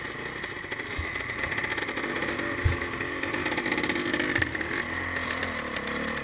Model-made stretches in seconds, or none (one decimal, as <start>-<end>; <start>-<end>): none